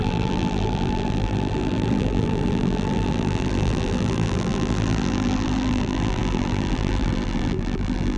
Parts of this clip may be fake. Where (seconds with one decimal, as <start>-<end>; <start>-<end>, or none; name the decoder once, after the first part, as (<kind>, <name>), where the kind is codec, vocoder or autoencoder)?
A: 0.0-8.2 (vocoder, BigVGAN v2)